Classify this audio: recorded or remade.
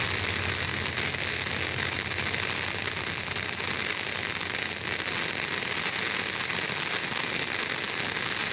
recorded